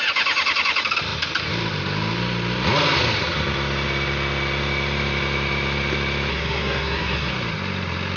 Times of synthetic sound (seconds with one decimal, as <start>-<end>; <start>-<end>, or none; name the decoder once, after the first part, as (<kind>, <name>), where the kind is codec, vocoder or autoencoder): 6.3-7.3 (codec, SNAC)